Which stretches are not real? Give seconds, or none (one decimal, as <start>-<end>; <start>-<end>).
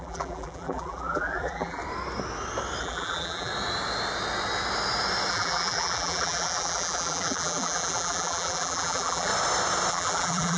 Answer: 0.0-1.8; 2.8-3.5; 5.3-9.3; 9.9-10.6